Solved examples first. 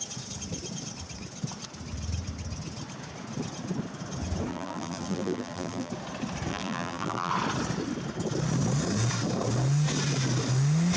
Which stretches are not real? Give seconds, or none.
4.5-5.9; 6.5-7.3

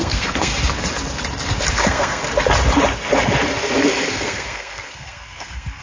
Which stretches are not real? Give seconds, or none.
0.0-0.5; 1.7-2.2; 4.1-5.8